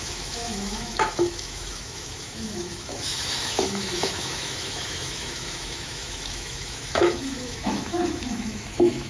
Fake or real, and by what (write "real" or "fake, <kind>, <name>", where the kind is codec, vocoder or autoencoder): fake, autoencoder, DAC-VAE